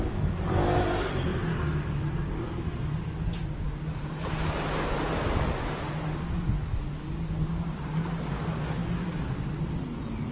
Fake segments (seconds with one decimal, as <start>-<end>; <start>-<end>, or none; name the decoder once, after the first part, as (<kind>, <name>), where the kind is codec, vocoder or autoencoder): none